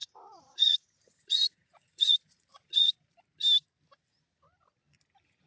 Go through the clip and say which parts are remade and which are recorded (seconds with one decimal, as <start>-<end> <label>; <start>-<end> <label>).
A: 0.0-3.1 remade; 3.1-5.5 recorded